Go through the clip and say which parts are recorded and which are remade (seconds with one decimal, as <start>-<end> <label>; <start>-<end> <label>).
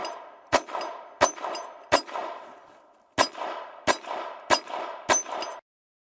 0.0-6.2 recorded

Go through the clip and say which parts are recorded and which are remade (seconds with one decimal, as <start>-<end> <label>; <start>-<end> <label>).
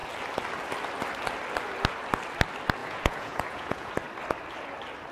0.0-2.8 recorded; 2.8-3.9 remade; 3.9-5.1 recorded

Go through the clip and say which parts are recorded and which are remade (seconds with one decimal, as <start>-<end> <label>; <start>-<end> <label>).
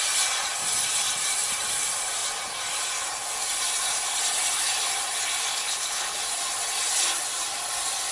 0.0-5.5 recorded; 5.5-6.2 remade; 6.2-8.1 recorded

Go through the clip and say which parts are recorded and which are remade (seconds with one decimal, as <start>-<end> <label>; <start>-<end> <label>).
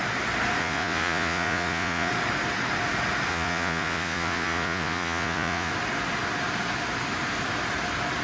0.0-0.6 recorded; 0.6-2.1 remade; 2.1-3.3 recorded; 3.3-5.7 remade; 5.7-8.2 recorded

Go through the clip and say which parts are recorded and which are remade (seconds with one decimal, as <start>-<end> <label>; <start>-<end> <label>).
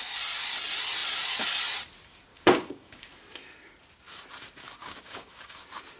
0.0-2.3 recorded; 2.3-3.1 remade; 3.1-4.8 recorded; 4.8-5.6 remade; 5.6-6.0 recorded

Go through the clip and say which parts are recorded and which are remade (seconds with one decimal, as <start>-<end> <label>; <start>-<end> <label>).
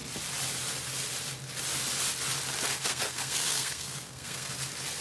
0.0-2.7 recorded; 2.7-4.5 remade; 4.5-5.0 recorded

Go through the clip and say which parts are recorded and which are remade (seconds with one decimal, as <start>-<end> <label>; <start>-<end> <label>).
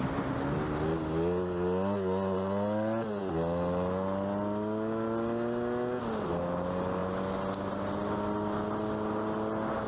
0.0-9.9 recorded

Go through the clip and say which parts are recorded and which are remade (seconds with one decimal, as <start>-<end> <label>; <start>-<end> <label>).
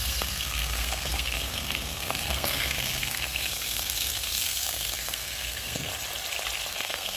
0.0-5.9 remade; 5.9-6.7 recorded; 6.7-7.2 remade